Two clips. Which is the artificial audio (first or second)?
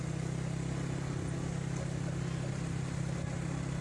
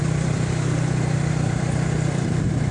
second